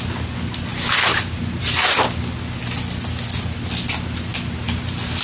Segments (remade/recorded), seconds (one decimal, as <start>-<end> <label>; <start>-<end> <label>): 0.0-5.2 recorded